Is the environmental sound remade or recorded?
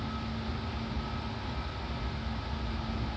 recorded